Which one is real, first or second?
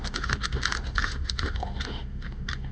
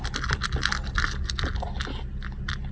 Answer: second